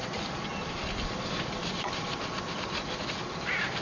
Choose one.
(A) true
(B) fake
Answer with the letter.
A